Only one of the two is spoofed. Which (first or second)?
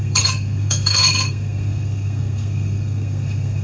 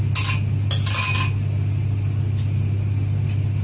first